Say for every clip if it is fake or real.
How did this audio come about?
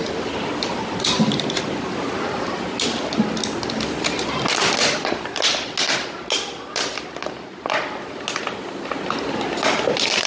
real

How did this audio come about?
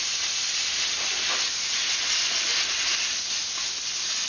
real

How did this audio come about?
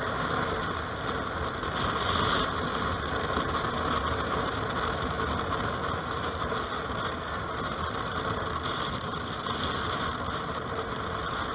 real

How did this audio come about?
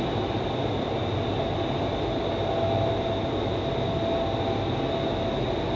real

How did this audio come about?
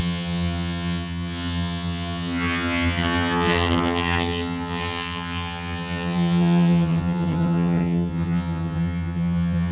fake